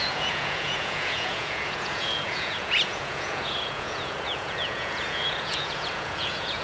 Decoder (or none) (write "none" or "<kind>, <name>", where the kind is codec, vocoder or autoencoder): vocoder, Vocos